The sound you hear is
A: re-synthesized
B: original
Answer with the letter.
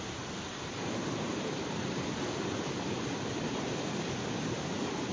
B